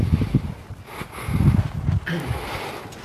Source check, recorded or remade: recorded